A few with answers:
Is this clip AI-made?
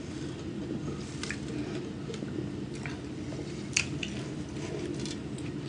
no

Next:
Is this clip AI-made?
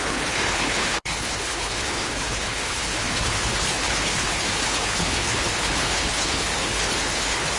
yes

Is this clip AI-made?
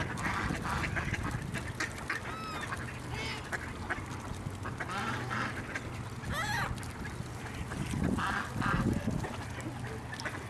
no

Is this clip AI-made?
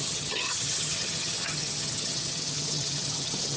yes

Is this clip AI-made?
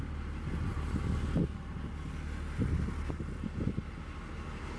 no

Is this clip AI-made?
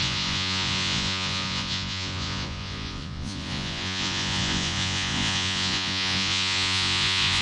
yes